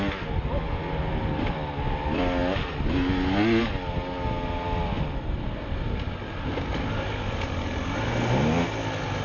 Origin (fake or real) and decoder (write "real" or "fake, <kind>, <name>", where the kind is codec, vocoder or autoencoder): real